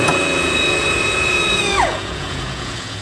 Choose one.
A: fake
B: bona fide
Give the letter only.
A